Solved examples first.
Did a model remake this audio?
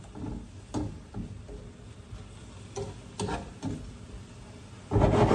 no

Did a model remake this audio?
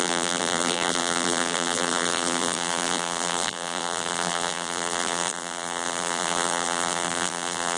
yes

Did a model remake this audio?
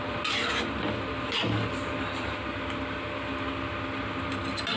no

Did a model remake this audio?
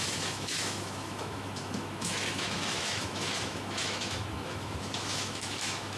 yes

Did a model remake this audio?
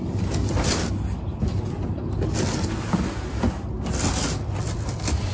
no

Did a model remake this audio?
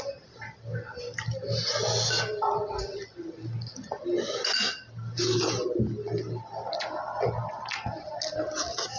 no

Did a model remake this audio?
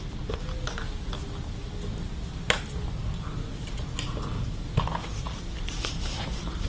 no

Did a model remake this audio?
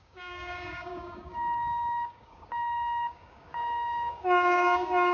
yes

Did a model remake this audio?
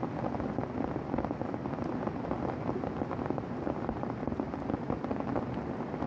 no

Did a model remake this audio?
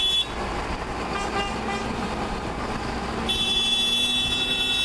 no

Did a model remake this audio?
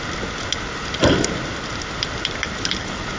no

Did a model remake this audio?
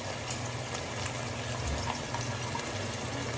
no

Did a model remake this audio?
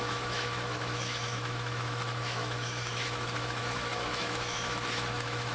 yes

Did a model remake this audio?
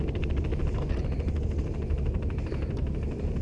no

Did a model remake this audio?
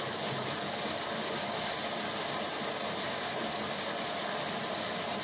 no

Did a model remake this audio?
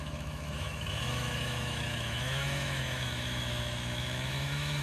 yes